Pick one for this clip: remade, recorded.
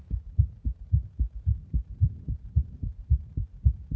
recorded